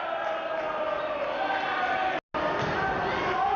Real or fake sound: real